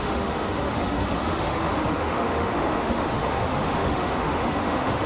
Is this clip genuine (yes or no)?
no